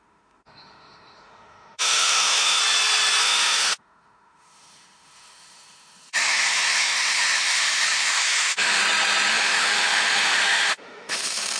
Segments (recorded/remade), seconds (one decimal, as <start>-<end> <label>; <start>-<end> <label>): 0.0-2.6 remade; 2.6-3.2 recorded; 3.2-8.8 remade; 8.8-9.3 recorded; 9.3-11.6 remade